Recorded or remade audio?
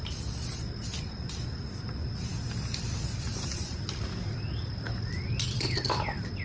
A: recorded